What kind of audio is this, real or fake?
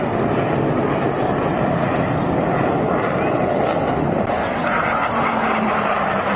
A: real